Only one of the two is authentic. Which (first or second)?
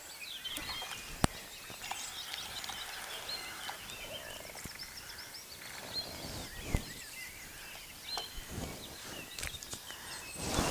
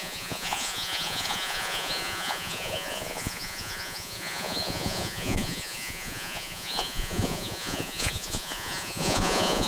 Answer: first